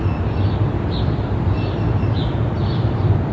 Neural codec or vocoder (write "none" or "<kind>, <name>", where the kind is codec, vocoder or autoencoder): vocoder, BigVGAN v2